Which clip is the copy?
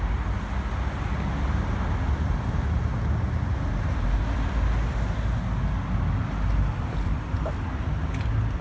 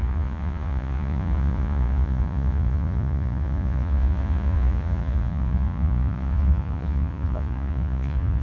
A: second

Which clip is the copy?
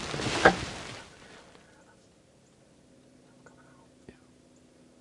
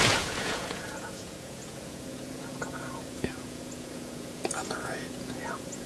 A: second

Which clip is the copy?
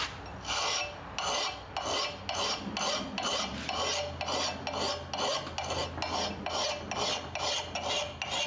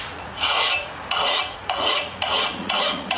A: second